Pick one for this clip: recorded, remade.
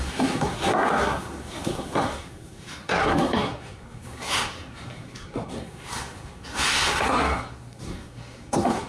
remade